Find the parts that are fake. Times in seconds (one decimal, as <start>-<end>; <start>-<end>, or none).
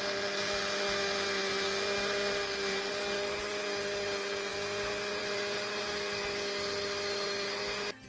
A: none